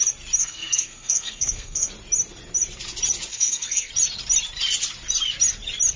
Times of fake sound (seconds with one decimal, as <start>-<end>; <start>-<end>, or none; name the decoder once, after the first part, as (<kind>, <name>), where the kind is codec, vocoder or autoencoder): 0.4-1.9 (codec, SNAC); 3.3-3.9